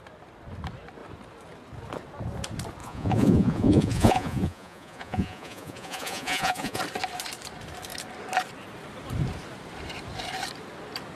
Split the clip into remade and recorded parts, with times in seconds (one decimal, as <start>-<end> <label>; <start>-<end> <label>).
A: 0.0-2.8 recorded; 2.8-6.8 remade; 6.8-11.2 recorded